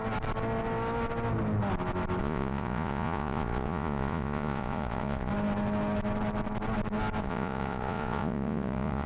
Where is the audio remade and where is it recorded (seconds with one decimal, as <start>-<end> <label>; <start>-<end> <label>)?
0.0-2.2 recorded; 2.2-5.3 remade; 5.3-7.2 recorded; 7.2-9.1 remade